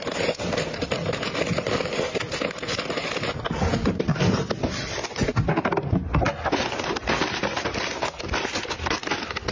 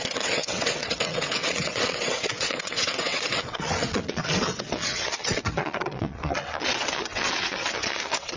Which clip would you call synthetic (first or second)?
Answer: second